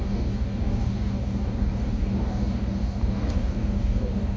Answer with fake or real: fake